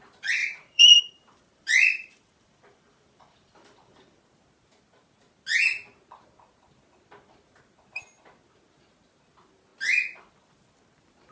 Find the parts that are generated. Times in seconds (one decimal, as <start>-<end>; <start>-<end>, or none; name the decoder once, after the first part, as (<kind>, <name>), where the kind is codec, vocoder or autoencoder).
0.4-4.2 (vocoder, BigVGAN v2)